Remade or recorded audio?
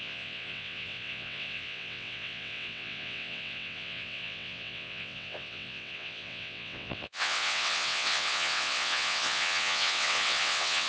remade